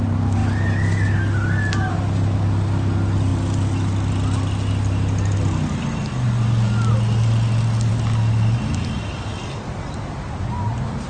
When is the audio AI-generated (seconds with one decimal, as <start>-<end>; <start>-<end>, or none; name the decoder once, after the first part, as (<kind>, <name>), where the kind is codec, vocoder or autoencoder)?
none